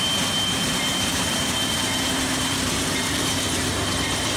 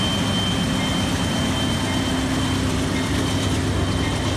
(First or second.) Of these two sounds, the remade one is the first